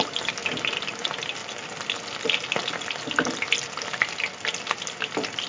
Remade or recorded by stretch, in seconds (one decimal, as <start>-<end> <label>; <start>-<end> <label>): 0.0-5.5 recorded